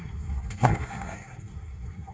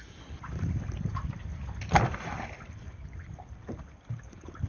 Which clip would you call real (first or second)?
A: second